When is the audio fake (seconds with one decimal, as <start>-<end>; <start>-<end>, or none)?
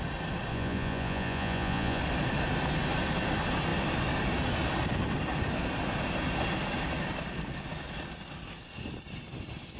0.5-2.0